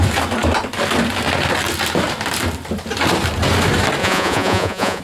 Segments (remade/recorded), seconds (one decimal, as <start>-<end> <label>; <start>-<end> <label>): 0.0-4.0 recorded; 4.0-5.0 remade